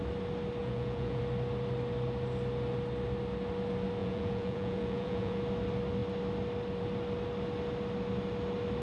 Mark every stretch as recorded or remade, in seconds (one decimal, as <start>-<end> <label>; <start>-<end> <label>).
0.0-0.6 recorded; 0.6-1.2 remade; 1.2-4.0 recorded; 4.0-5.4 remade; 5.4-8.8 recorded